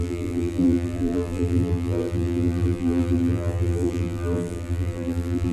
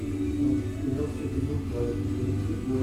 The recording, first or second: second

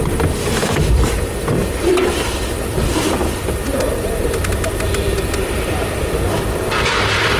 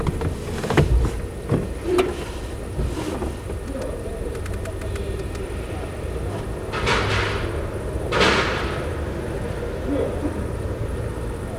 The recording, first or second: second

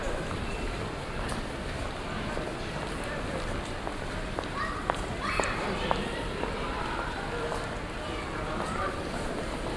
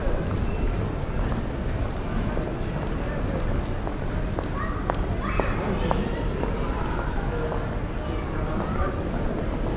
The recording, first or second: second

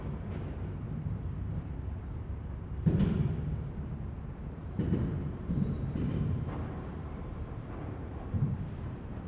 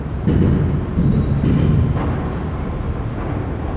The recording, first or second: second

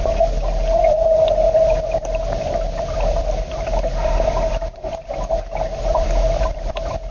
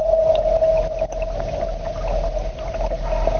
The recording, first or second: second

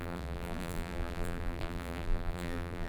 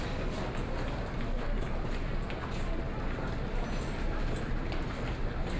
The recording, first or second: second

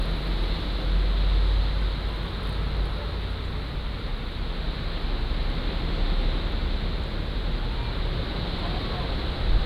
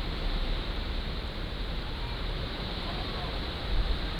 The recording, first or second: first